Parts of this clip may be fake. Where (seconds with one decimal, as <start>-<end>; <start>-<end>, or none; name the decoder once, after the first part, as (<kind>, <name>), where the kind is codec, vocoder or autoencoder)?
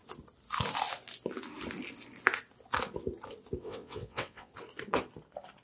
3.6-4.5 (vocoder, WaveNeXt)